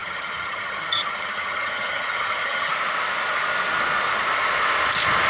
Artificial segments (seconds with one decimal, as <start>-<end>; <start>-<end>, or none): 0.0-2.7